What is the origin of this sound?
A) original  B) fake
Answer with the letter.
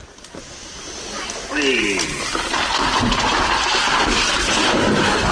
A